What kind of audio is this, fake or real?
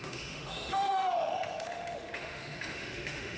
fake